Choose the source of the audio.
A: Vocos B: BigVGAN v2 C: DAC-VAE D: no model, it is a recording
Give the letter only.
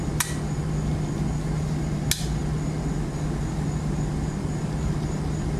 D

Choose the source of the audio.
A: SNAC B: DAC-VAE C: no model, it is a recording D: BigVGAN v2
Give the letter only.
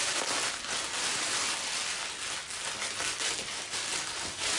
C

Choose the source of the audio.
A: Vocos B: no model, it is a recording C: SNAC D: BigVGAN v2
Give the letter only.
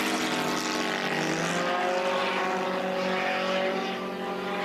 B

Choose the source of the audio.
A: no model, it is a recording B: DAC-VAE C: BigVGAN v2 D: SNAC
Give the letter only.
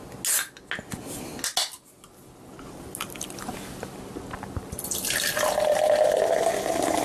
A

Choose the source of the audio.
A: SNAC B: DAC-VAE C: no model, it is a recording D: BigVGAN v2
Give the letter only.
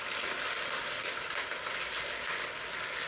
C